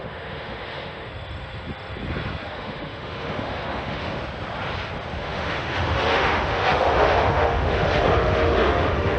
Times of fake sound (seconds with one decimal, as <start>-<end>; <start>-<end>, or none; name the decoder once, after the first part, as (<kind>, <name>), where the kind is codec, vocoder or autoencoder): 0.0-1.1 (autoencoder, DAC-VAE); 2.5-4.2; 5.2-9.2